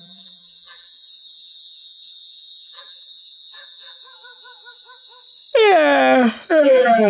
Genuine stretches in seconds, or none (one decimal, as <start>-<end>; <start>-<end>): 5.2-6.5